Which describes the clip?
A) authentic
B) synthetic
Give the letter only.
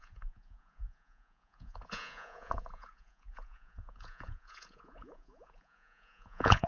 B